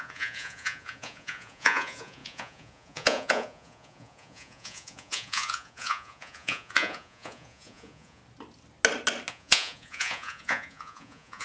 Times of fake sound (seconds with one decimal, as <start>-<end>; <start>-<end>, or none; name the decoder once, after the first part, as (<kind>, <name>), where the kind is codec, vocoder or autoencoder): 0.0-8.2 (vocoder, Vocos); 9.3-11.4